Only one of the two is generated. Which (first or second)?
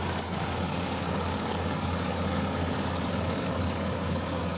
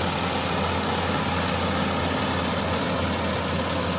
first